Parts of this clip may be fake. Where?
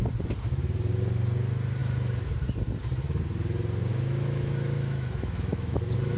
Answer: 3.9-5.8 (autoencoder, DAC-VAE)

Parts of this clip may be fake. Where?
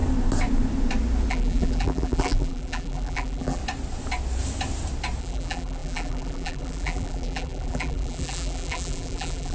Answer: 1.3-3.6 (vocoder, BigVGAN v2); 5.2-9.5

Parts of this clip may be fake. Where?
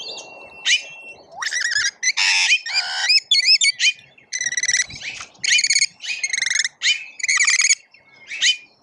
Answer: none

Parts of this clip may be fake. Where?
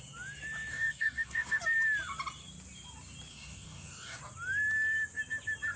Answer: 0.7-1.6 (codec, DAC); 3.3-4.2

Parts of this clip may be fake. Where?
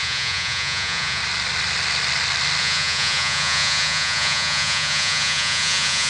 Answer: 0.0-1.2 (vocoder, Vocos); 2.6-6.1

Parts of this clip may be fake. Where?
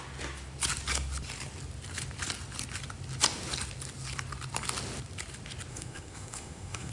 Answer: 5.7-6.9 (codec, SNAC)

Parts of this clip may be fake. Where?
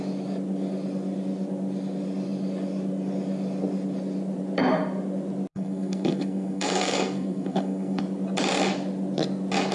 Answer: 5.5-8.0 (codec, SNAC)